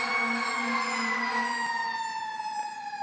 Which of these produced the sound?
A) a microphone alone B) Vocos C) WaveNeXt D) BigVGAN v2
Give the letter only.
D